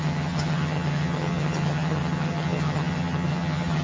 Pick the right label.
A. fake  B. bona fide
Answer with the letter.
A